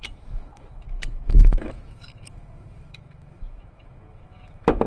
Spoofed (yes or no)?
yes